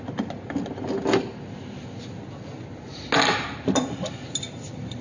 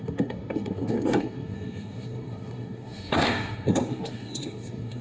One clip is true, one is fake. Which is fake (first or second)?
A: second